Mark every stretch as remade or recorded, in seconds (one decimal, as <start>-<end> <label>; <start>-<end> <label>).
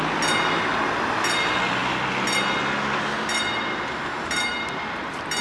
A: 0.0-5.4 recorded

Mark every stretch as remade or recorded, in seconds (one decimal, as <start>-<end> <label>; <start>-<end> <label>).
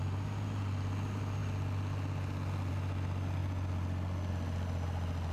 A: 0.0-5.3 recorded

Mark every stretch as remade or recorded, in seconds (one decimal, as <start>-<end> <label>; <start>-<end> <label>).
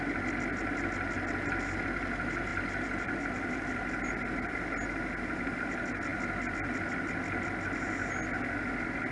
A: 0.0-9.1 recorded